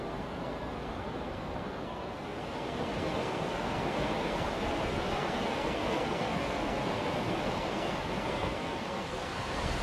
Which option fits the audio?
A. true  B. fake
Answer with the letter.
B